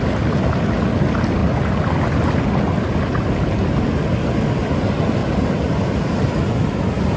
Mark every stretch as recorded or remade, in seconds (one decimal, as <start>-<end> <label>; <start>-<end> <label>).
0.0-7.2 recorded